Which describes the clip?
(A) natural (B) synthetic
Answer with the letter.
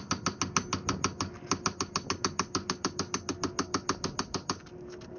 A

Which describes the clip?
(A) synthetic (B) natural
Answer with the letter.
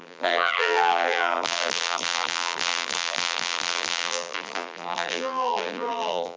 A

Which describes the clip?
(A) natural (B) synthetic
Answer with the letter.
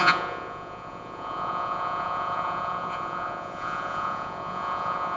B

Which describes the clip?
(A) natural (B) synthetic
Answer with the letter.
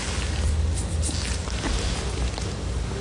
A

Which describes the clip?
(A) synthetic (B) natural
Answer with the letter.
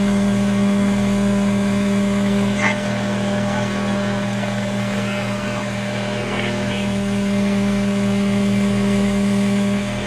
A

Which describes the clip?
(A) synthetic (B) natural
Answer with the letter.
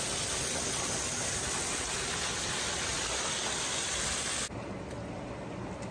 B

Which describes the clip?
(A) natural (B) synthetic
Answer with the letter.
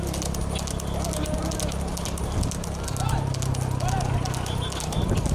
A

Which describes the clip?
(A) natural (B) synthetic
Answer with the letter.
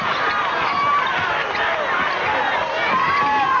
A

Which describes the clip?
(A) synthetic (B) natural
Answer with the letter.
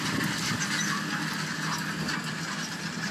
B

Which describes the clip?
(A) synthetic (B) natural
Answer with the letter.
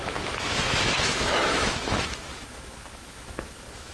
A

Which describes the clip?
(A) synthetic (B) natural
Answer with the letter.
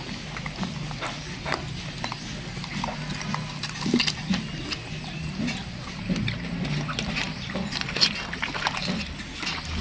B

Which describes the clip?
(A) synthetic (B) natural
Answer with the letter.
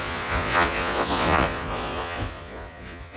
A